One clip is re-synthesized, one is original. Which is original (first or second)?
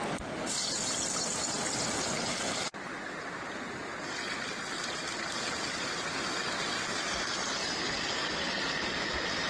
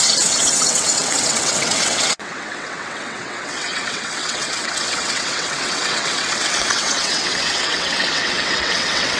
first